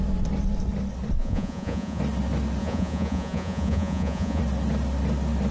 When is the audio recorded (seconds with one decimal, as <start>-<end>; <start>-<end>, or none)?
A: 0.0-1.2; 2.0-2.6; 4.4-5.5